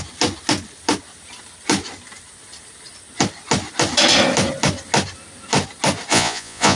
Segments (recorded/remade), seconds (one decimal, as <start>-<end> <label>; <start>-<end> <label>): 0.0-6.1 recorded; 6.1-6.8 remade